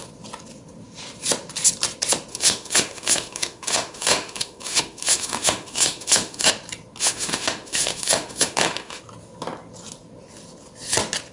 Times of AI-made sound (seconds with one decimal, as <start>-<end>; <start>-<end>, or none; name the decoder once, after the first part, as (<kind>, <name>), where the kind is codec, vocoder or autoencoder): 2.3-6.5 (autoencoder, DAC-VAE); 7.0-9.0